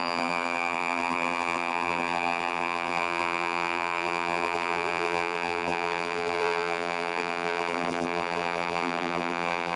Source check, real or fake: fake